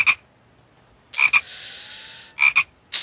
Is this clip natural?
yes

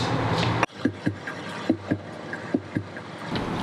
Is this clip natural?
yes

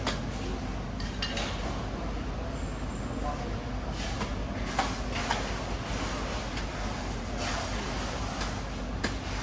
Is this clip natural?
yes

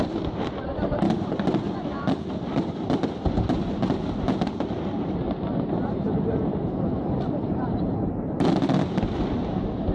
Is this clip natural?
yes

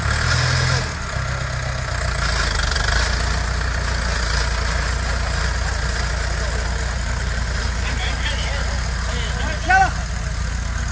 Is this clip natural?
yes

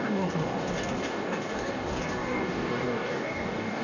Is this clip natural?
no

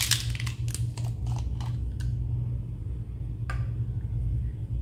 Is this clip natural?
yes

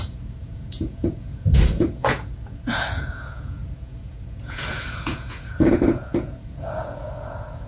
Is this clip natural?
no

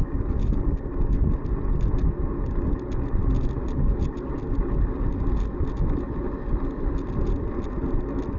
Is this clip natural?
yes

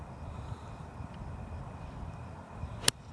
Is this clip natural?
no